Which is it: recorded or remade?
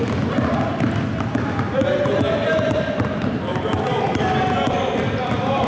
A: recorded